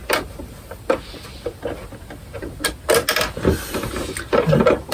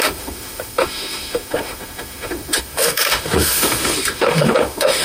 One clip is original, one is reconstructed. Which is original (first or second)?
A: first